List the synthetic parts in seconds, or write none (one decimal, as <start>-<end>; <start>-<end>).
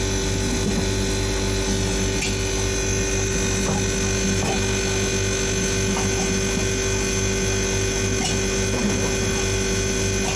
none